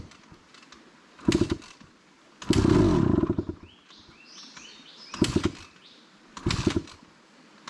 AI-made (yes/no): no